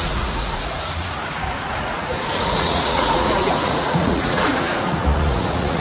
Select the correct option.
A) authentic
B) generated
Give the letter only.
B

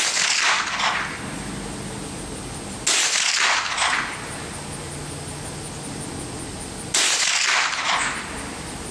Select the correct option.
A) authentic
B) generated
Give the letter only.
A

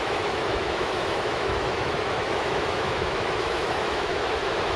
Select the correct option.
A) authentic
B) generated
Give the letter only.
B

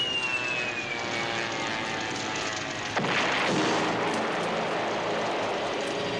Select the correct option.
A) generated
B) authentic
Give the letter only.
B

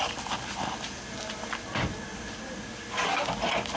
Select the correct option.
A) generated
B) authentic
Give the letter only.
B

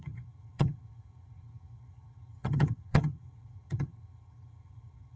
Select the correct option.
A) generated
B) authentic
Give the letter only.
A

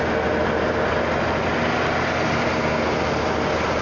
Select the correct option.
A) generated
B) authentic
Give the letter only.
B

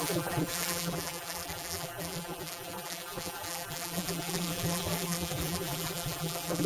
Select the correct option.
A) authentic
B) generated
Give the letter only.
B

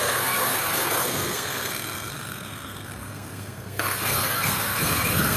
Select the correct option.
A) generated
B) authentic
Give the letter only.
A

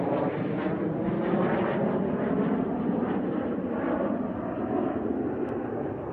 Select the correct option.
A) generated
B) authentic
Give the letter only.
B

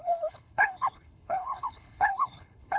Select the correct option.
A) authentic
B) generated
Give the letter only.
B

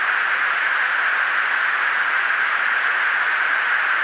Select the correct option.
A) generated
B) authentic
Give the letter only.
A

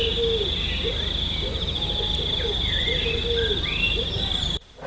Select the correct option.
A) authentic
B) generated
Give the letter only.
A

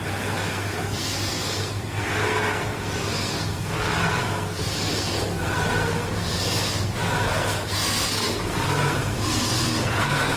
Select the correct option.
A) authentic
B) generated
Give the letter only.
B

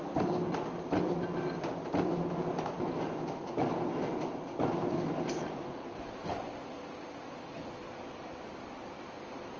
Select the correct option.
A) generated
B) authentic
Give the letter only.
B